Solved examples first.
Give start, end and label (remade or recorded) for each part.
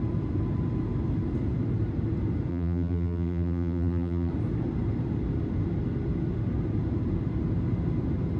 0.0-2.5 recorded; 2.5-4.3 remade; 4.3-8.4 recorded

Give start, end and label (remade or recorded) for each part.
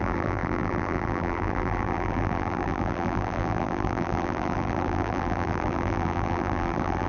0.0-7.1 remade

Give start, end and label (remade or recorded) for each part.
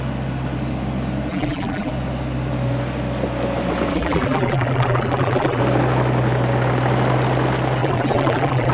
0.0-1.3 recorded; 1.3-1.9 remade; 1.9-3.9 recorded; 3.9-5.6 remade; 5.6-7.8 recorded; 7.8-8.7 remade